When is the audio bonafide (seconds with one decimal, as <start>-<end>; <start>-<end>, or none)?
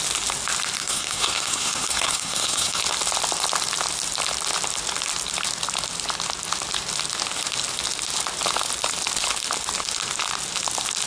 0.0-0.8; 2.8-11.1